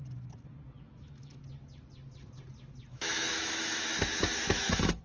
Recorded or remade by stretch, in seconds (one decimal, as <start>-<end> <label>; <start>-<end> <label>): 0.0-0.8 recorded; 0.8-1.4 remade; 1.4-2.9 recorded; 2.9-5.0 remade